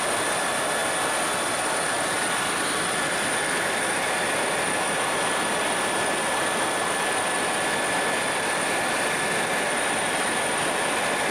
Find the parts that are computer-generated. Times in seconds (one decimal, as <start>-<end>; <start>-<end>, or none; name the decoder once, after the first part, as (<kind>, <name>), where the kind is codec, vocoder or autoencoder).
none